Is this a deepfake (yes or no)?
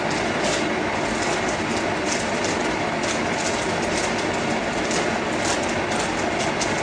no